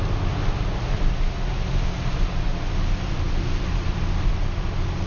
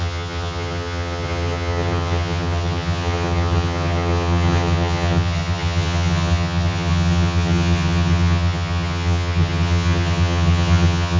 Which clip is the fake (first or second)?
second